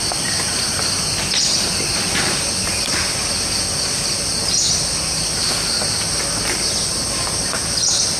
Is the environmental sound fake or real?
real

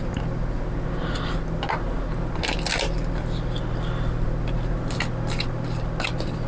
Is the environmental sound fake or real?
real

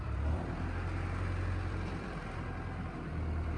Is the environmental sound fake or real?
fake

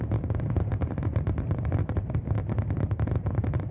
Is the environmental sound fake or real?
fake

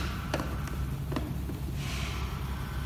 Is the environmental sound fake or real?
real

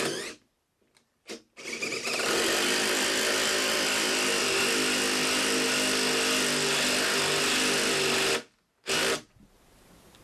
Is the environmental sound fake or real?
real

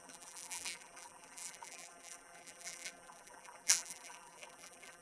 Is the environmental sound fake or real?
fake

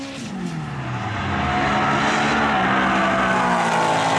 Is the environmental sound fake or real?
real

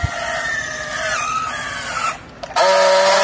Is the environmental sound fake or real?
real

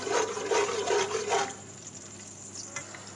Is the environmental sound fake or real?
real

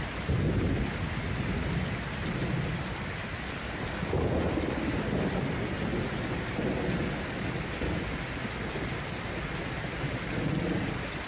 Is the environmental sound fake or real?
real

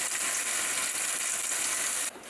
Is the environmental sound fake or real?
real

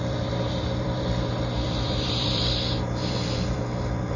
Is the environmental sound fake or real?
fake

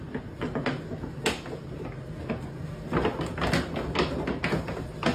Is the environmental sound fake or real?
real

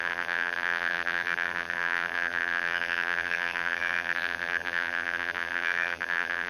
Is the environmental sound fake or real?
fake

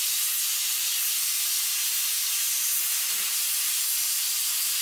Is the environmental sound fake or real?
real